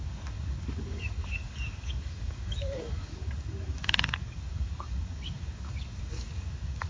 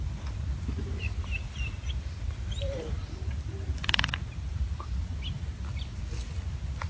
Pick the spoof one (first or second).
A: first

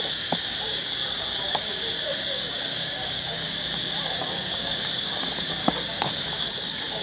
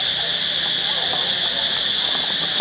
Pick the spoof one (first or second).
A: first